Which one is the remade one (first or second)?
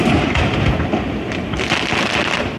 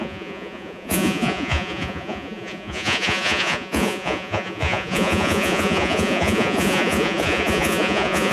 second